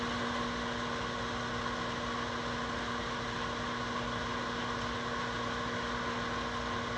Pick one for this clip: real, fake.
real